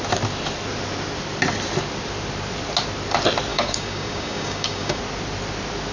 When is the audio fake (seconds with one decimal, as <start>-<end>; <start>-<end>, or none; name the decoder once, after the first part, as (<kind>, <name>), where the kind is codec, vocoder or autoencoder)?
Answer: 3.5-5.0 (codec, DAC)